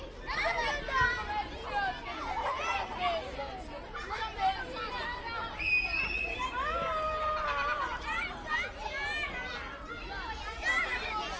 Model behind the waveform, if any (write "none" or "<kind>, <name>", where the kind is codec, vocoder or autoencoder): none